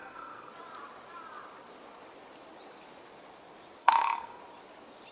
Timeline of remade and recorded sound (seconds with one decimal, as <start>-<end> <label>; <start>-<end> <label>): 0.0-0.5 remade; 0.5-3.8 recorded; 3.8-4.4 remade; 4.4-5.1 recorded